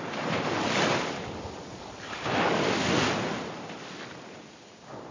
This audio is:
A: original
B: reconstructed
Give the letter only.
A